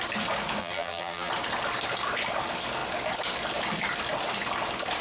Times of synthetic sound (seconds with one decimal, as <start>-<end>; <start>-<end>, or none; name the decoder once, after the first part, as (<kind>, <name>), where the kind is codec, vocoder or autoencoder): 0.6-1.3 (vocoder, BigVGAN v2)